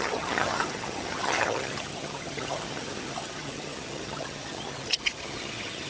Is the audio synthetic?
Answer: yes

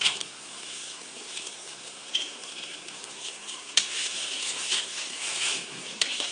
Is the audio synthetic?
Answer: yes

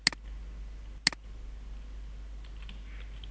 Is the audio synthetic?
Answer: no